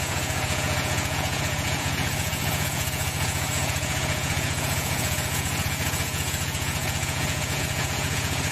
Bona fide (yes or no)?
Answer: no